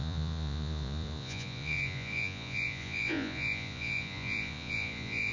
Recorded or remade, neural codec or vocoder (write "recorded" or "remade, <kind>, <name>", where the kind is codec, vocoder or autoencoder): remade, vocoder, Vocos